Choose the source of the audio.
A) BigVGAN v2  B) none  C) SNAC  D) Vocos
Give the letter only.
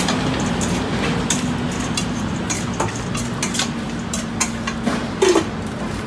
B